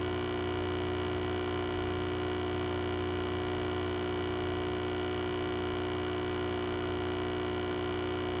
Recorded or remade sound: recorded